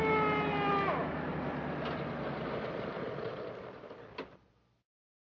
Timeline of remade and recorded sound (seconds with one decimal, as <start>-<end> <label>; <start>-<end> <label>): 0.0-1.3 recorded; 1.3-4.5 remade; 4.5-5.3 recorded